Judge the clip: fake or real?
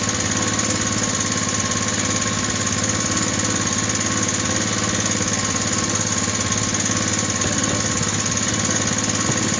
real